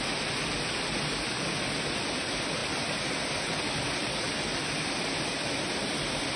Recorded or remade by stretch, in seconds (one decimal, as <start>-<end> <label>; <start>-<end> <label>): 0.0-6.4 recorded

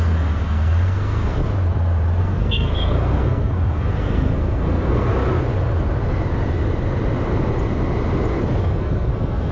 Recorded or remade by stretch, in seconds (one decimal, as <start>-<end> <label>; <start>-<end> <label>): 0.0-1.4 remade; 1.4-2.2 recorded; 2.2-5.1 remade; 5.1-8.6 recorded; 8.6-9.5 remade